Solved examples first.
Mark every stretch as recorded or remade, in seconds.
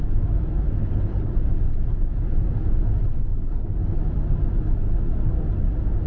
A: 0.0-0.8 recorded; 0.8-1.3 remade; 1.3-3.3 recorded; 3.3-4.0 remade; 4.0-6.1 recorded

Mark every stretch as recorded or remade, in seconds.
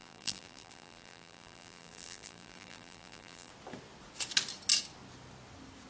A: 0.0-3.5 remade; 3.5-5.9 recorded